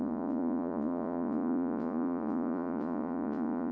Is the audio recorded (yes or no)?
no